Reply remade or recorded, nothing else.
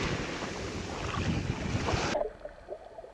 recorded